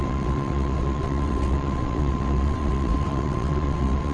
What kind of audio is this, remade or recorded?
remade